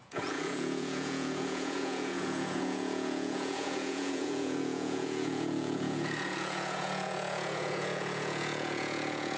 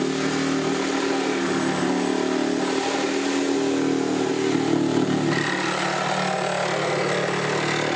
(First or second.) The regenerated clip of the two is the first